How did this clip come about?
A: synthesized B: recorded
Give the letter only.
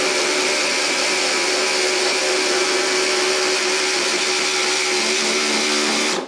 B